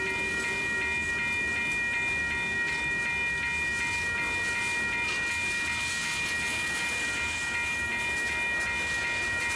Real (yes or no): yes